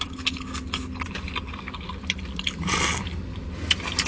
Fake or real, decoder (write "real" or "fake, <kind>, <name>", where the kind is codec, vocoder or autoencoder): real